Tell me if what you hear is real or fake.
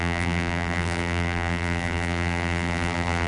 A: fake